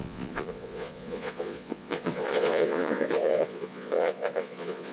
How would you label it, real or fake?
fake